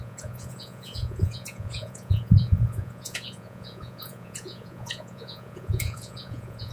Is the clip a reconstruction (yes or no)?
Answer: yes